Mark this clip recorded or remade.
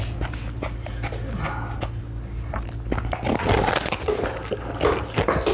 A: recorded